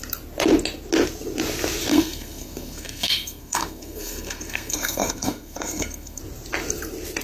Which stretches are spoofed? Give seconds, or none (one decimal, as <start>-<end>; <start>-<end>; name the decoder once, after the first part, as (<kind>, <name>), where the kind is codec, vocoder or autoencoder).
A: 1.9-6.2 (codec, SNAC)